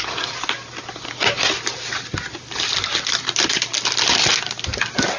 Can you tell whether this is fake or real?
real